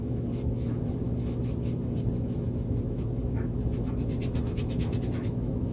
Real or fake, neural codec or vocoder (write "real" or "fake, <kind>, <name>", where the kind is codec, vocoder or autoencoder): fake, autoencoder, DAC-VAE